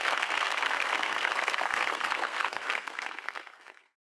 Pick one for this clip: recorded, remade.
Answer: remade